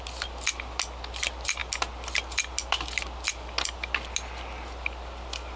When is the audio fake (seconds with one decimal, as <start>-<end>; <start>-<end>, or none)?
none